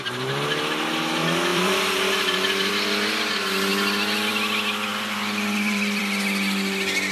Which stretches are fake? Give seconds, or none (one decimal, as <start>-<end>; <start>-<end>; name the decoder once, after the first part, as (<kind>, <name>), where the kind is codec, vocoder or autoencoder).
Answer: 1.5-2.7 (vocoder, BigVGAN v2); 4.9-6.0